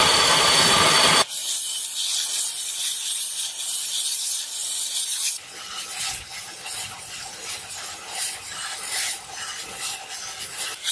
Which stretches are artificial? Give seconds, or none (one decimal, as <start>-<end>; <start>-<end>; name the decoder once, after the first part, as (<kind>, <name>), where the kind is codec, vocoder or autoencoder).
1.4-3.6 (vocoder, BigVGAN v2); 4.6-6.3; 8.2-9.6